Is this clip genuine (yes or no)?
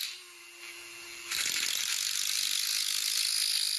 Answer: yes